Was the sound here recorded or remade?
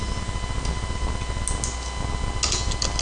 recorded